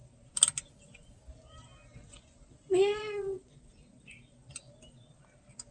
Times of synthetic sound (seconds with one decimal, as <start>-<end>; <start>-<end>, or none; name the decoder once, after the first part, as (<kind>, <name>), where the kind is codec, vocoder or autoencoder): 1.9-3.7 (vocoder, Vocos)